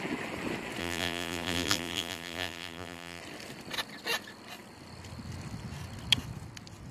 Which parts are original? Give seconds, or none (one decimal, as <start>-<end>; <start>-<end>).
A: 0.0-0.8; 3.2-6.9